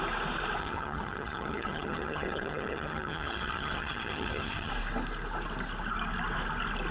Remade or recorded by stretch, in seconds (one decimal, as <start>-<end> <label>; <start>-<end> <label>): 0.0-0.6 recorded; 0.6-4.7 remade; 4.7-6.9 recorded